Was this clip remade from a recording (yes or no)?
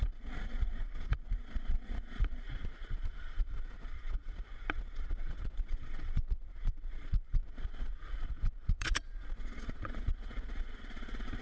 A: yes